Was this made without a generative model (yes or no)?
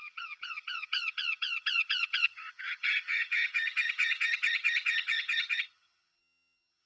no